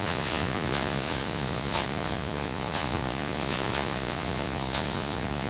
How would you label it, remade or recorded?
remade